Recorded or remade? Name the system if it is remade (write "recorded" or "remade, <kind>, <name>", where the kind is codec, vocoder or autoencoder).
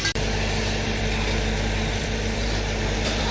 remade, vocoder, BigVGAN v2